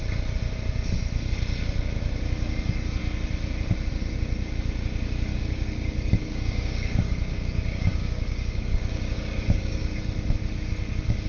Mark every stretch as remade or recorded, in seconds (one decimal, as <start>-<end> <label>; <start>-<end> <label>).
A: 0.0-5.3 recorded; 5.3-10.0 remade; 10.0-11.3 recorded